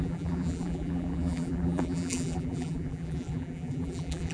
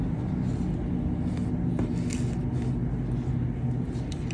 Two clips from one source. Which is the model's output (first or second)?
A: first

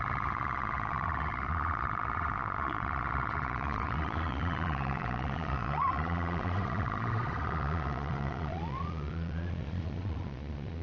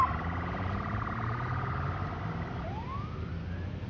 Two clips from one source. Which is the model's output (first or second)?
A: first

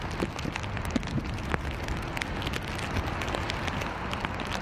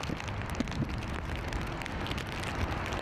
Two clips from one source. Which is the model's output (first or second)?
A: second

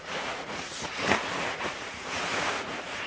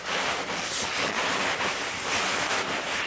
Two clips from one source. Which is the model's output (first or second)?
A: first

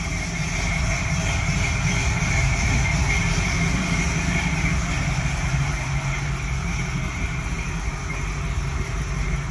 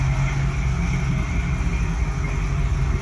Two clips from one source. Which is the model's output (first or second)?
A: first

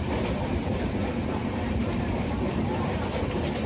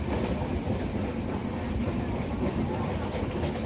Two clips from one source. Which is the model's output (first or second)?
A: first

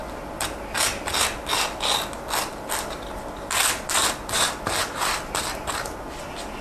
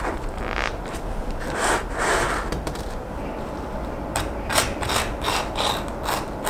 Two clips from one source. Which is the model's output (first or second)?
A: second